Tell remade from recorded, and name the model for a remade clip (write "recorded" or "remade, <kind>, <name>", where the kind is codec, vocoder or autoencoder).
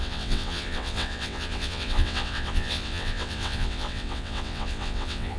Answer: remade, vocoder, WaveNeXt